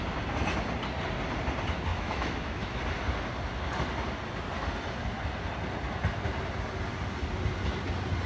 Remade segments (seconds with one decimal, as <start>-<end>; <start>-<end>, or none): 1.9-2.8